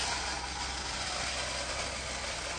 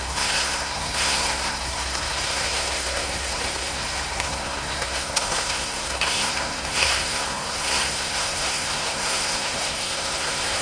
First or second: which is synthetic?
second